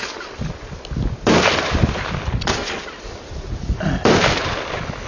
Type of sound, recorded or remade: recorded